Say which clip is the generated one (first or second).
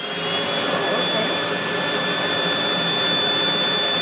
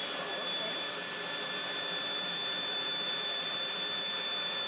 second